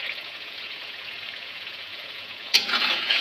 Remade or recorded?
remade